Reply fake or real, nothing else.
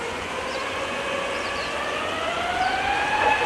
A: fake